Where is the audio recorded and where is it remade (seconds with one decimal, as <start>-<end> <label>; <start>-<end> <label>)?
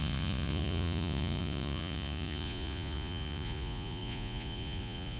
0.0-5.2 remade